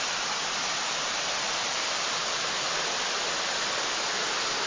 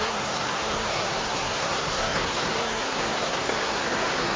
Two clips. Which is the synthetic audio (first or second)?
second